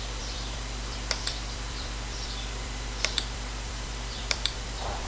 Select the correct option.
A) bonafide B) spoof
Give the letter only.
B